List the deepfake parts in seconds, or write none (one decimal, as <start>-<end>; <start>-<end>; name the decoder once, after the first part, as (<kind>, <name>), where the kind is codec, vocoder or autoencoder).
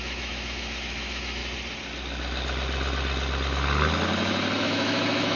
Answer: 0.0-1.4 (autoencoder, DAC-VAE); 4.6-5.4